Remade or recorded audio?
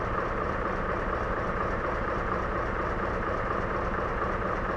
remade